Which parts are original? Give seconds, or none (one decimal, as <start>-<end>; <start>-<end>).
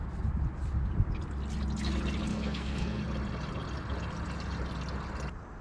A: 0.0-2.3; 3.0-5.6